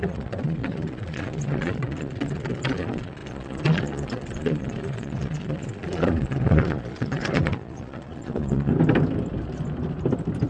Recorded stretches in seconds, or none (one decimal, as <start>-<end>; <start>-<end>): 8.7-10.5